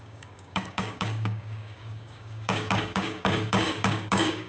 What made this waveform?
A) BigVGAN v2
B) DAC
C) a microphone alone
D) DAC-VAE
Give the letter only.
B